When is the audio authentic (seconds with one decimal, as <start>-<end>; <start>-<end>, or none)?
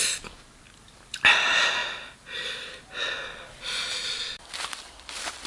0.0-5.5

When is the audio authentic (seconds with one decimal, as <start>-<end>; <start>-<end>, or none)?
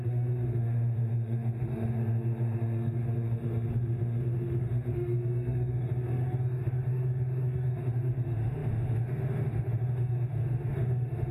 none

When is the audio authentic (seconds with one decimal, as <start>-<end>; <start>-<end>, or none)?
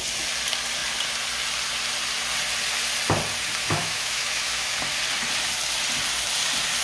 0.0-3.8; 4.7-6.8